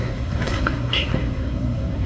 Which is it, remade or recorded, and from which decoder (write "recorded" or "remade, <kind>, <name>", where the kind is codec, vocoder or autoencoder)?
remade, codec, SNAC